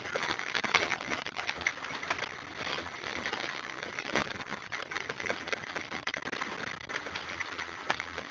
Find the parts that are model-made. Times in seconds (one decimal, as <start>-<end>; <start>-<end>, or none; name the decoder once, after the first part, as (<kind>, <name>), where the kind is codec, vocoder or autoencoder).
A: 0.0-1.7 (vocoder, Vocos); 2.7-6.2; 7.3-8.3